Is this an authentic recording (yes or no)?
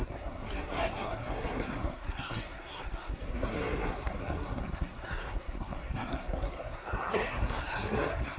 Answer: no